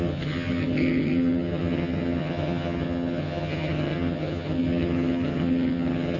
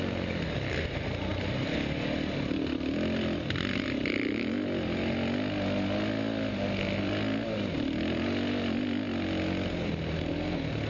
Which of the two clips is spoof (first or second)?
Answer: first